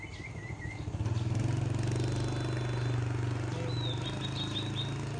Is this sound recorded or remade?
recorded